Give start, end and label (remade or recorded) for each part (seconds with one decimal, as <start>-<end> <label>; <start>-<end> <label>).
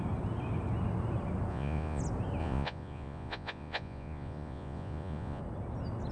0.0-1.5 recorded; 1.5-2.0 remade; 2.0-2.4 recorded; 2.4-5.4 remade; 5.4-6.1 recorded